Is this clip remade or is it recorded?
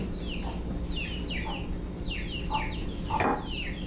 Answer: recorded